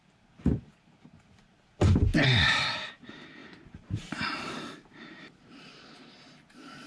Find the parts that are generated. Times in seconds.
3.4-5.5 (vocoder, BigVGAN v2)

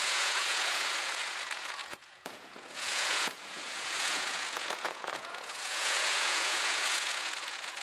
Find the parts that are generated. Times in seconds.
0.0-7.8 (vocoder, Vocos)